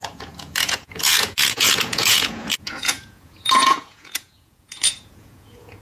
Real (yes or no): no